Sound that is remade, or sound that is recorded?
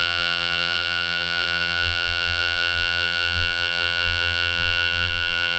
remade